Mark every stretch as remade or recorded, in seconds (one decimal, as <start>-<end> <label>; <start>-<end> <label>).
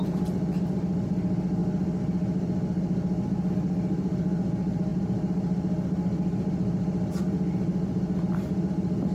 0.0-9.1 recorded